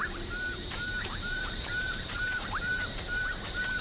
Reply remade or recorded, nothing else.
remade